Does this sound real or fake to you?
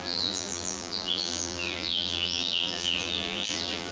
fake